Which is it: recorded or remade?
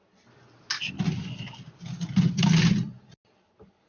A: recorded